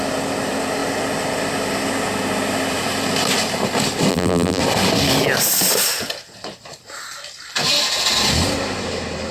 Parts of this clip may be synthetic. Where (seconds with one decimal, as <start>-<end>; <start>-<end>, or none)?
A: 4.1-4.6